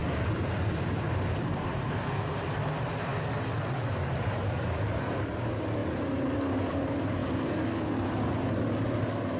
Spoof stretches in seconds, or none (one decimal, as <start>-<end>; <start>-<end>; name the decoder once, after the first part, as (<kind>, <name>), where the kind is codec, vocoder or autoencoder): 0.0-3.1 (vocoder, BigVGAN v2); 3.9-5.8; 6.7-7.2; 8.5-9.4